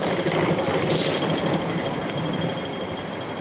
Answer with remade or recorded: recorded